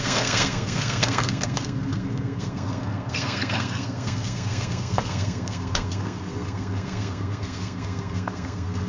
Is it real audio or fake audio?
fake